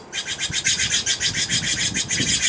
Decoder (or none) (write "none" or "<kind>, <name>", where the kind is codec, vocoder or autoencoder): none